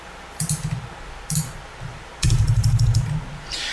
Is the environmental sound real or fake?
fake